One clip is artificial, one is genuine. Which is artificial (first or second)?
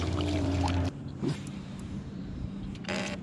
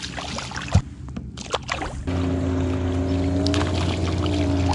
first